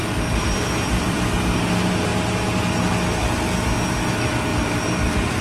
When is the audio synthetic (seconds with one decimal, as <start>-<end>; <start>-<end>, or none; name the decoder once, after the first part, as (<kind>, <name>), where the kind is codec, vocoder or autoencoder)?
0.0-1.3 (vocoder, BigVGAN v2); 4.5-5.4